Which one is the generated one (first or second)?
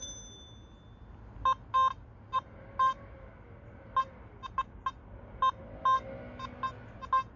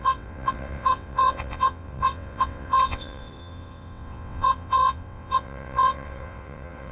second